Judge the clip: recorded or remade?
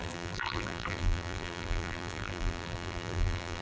remade